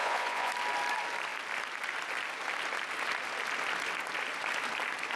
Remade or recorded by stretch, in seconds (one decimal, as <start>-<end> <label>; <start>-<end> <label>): 0.0-0.5 remade; 0.5-5.2 recorded